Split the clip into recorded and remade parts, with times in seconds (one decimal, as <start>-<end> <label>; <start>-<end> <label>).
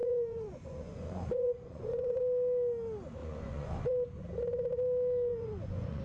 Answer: 0.0-2.2 remade; 2.2-3.2 recorded; 3.2-3.9 remade; 3.9-5.3 recorded; 5.3-6.0 remade